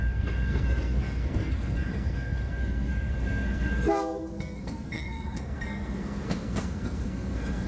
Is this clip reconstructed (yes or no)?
yes